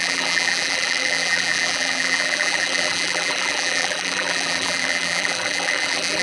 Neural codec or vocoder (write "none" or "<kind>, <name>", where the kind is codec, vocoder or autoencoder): vocoder, BigVGAN v2